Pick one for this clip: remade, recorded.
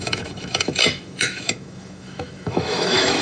remade